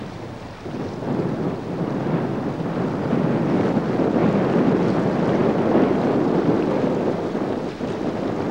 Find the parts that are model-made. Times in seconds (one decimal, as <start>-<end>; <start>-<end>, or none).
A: none